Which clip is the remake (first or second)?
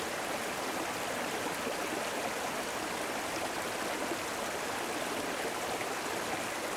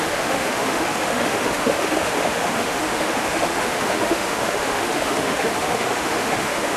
second